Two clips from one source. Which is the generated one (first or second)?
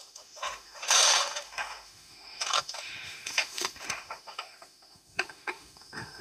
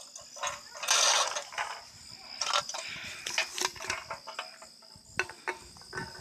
first